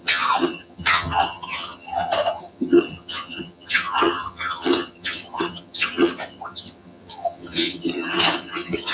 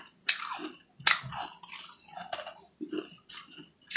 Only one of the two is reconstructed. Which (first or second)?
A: first